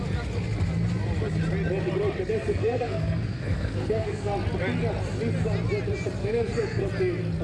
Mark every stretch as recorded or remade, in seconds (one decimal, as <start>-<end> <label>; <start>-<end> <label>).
0.0-2.5 recorded; 2.5-4.3 remade; 4.3-6.2 recorded; 6.2-6.8 remade; 6.8-7.4 recorded

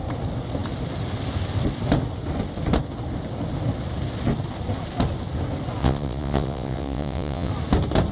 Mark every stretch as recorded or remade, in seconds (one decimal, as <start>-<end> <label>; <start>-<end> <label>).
0.0-5.8 recorded; 5.8-7.5 remade; 7.5-8.1 recorded

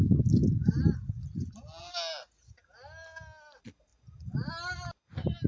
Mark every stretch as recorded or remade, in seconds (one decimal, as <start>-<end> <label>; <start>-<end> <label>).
0.0-5.5 recorded

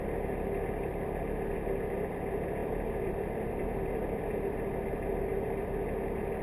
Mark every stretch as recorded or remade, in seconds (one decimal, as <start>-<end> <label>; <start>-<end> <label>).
0.0-0.9 recorded; 0.9-1.5 remade; 1.5-2.6 recorded; 2.6-4.3 remade; 4.3-6.4 recorded

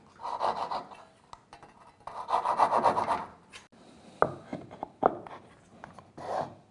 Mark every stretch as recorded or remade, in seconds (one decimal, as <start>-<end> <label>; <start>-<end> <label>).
0.0-6.7 recorded

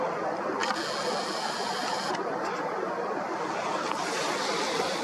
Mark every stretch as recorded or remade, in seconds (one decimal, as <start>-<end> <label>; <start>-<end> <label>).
0.0-0.6 remade; 0.6-1.2 recorded; 1.2-5.0 remade